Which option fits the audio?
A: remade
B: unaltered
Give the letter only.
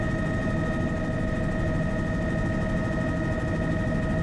B